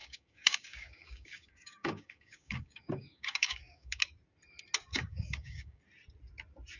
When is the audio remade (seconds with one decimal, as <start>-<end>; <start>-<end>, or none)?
0.0-4.0; 4.9-5.8

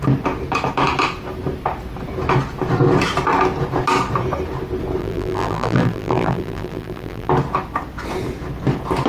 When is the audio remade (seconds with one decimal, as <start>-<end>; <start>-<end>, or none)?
5.0-7.3